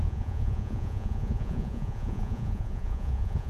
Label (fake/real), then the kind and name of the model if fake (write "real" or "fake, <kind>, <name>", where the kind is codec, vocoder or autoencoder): fake, vocoder, Vocos